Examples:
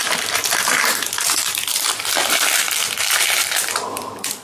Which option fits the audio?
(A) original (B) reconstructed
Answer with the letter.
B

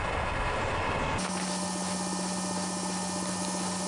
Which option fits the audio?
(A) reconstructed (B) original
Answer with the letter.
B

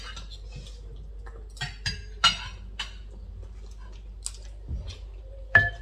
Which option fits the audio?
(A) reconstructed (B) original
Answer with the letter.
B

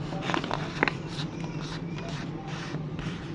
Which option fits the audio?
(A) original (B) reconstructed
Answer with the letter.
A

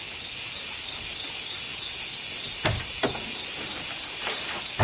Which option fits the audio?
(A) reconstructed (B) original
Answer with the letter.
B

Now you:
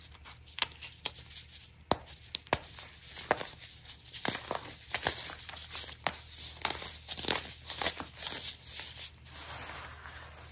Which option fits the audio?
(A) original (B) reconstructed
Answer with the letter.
A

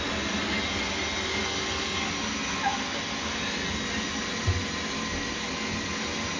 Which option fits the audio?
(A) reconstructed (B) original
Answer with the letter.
B